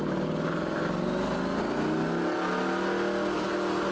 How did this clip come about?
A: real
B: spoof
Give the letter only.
A